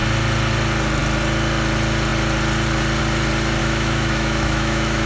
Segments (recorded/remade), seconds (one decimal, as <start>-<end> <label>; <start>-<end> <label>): 0.0-3.6 recorded; 3.6-5.1 remade